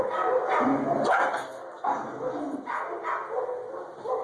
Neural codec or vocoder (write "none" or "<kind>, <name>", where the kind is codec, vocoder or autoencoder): none